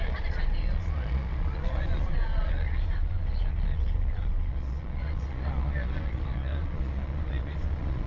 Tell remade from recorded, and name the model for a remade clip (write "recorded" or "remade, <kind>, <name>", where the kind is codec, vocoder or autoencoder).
remade, vocoder, Vocos